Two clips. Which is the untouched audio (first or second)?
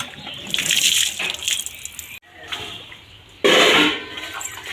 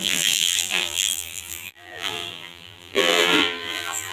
first